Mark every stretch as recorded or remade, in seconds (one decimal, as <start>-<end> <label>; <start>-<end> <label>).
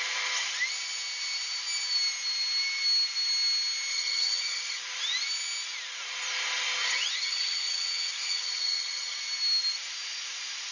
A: 0.0-3.9 recorded; 3.9-4.8 remade; 4.8-6.8 recorded; 6.8-9.2 remade; 9.2-10.7 recorded